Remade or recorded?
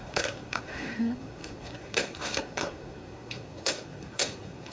remade